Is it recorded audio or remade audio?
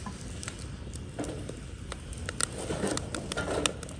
recorded